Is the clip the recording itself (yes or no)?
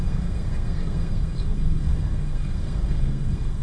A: no